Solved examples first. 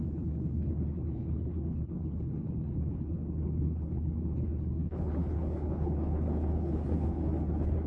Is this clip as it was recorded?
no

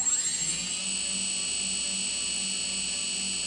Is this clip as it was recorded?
yes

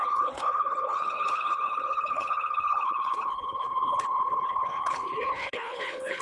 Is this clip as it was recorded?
no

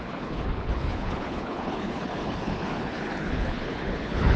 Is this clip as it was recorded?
no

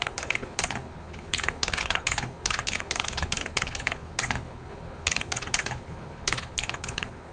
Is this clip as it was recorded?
no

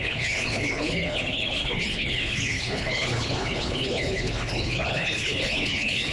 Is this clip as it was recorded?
no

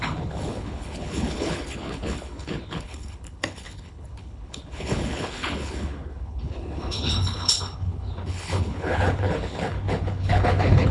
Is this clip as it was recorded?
no